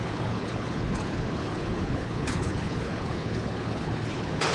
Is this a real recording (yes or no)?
no